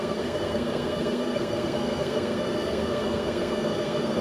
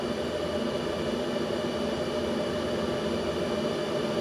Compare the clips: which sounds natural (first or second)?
second